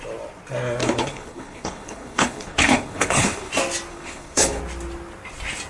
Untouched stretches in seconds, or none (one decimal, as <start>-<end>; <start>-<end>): 0.0-0.8; 3.5-3.9; 4.6-5.7